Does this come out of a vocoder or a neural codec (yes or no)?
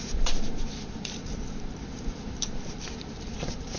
yes